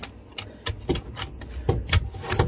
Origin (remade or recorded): recorded